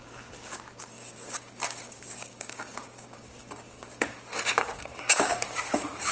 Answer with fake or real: fake